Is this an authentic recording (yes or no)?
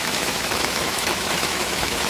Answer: no